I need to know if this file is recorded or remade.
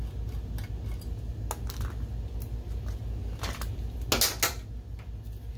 recorded